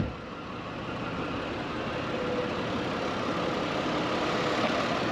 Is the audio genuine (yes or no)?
yes